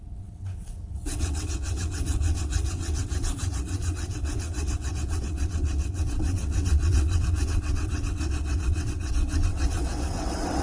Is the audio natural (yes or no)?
no